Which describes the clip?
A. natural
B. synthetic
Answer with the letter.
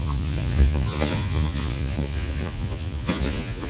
B